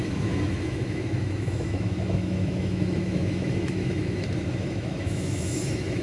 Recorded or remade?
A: remade